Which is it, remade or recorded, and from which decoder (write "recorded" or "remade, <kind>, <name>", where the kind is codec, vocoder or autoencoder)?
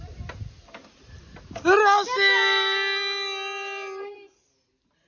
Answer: recorded